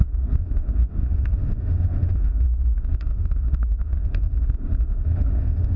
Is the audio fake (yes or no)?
yes